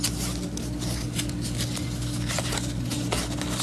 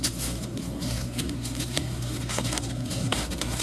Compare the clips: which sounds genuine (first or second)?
first